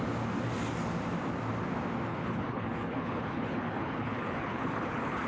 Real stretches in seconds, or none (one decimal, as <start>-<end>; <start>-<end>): 0.0-2.1